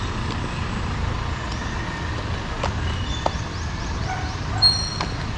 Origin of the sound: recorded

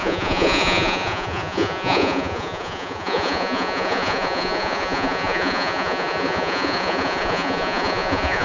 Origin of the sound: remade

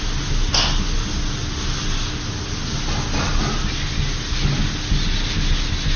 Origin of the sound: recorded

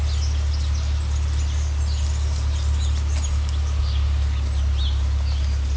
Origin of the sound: recorded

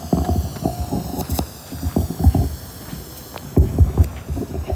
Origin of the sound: recorded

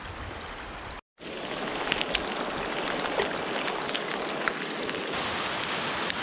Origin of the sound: recorded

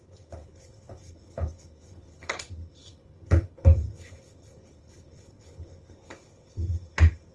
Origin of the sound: remade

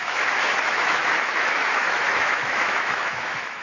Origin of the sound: remade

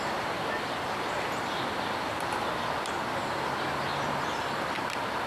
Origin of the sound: recorded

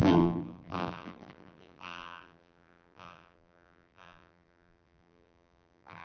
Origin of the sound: remade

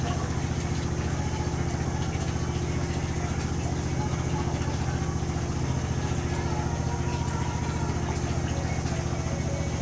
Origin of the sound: recorded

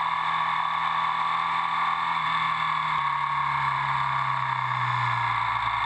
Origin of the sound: recorded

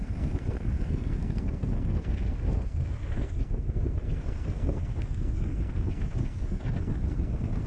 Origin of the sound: remade